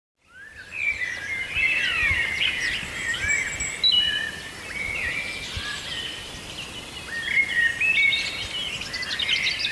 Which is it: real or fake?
real